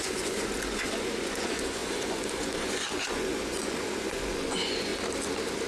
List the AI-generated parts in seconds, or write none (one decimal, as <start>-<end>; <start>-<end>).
0.0-4.9